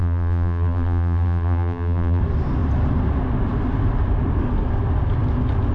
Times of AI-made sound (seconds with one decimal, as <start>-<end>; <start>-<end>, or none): 0.0-2.2